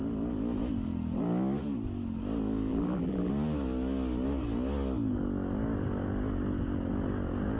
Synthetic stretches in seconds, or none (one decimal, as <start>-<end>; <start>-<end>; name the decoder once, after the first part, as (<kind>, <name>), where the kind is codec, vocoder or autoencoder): 2.7-3.3 (vocoder, BigVGAN v2)